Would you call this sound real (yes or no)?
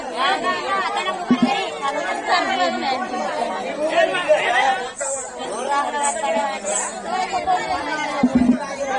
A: yes